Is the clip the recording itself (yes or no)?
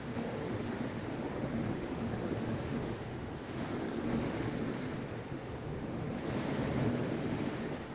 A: no